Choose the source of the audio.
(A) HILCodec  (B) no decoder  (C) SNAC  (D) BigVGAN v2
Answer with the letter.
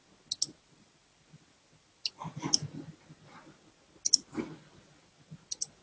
B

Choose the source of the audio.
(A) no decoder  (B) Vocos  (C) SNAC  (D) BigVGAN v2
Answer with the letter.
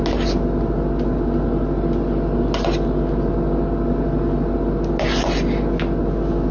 A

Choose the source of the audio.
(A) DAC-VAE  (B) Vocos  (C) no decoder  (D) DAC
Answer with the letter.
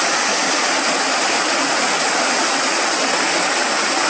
C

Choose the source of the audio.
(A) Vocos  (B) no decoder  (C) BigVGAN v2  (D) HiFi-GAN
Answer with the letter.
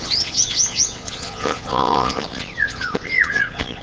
A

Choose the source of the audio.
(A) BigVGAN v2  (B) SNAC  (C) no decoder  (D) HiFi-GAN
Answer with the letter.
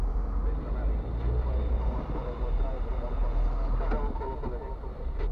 C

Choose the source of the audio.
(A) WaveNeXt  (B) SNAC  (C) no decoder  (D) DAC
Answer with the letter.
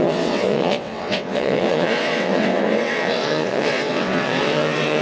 A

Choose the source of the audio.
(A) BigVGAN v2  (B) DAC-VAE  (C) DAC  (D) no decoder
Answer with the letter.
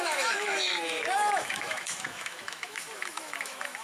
B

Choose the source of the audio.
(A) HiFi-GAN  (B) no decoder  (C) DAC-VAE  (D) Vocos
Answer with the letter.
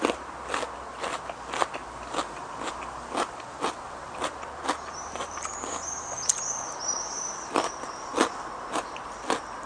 B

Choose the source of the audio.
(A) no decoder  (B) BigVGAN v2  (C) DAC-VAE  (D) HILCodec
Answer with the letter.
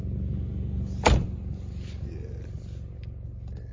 A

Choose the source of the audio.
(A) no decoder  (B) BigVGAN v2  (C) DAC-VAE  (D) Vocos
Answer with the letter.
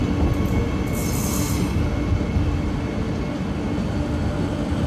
A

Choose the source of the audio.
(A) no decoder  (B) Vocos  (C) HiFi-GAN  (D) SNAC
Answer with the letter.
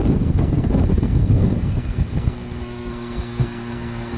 D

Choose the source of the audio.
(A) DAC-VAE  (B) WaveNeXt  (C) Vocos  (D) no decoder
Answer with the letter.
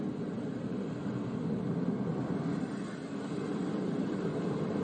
D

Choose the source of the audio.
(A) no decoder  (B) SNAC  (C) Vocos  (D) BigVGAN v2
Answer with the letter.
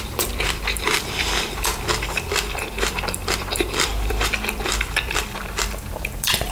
D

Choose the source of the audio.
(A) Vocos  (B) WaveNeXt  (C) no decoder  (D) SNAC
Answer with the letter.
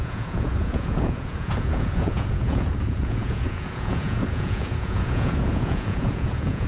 A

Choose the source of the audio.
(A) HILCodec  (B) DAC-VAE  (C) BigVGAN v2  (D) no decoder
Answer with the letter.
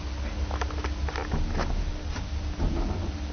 D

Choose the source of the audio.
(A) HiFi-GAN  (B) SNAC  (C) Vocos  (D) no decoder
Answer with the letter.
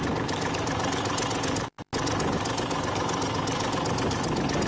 D